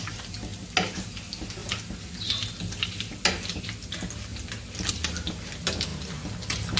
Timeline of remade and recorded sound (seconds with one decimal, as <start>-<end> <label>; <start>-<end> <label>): 0.0-6.8 recorded